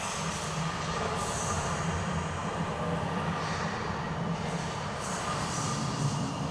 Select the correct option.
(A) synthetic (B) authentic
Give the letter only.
A